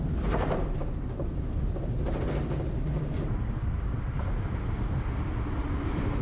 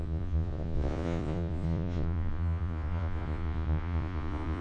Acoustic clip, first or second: first